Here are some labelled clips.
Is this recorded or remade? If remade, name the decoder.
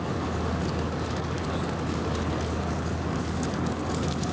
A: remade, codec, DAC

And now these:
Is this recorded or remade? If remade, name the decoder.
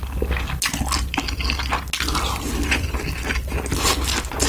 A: recorded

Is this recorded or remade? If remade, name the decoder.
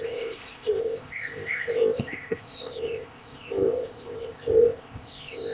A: remade, codec, ZipCodec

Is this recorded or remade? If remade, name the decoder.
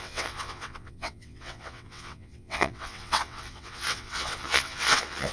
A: remade, vocoder, WaveNeXt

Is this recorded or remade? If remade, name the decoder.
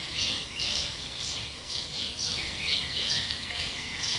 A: remade, codec, SNAC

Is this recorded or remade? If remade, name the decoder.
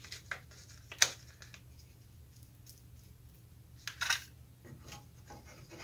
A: recorded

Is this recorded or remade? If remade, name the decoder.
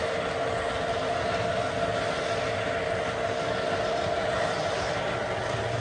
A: recorded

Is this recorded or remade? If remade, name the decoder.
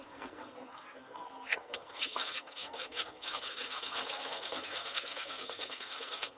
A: remade, codec, SNAC